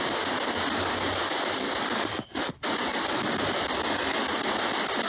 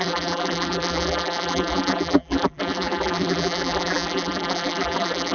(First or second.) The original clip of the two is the first